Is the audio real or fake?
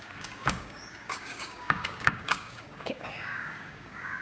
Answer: fake